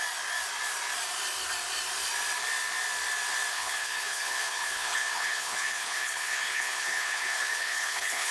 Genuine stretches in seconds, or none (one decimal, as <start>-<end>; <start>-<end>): 0.0-3.5

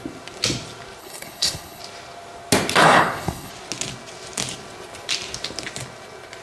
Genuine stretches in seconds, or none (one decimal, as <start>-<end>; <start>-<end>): 0.0-1.0; 1.8-2.8; 3.5-6.4